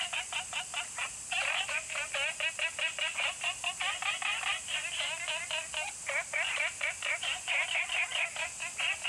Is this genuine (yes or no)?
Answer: yes